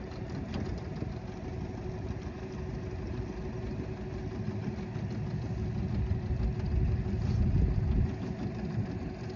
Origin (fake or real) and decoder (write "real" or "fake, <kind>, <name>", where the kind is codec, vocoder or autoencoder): real